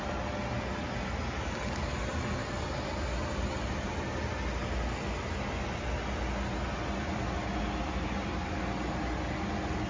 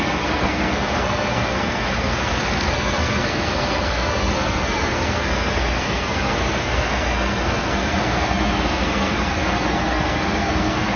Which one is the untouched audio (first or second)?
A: first